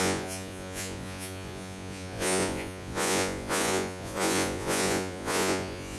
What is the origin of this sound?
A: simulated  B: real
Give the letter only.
A